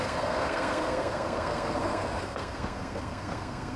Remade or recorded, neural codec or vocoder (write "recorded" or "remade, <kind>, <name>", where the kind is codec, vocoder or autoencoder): remade, codec, SNAC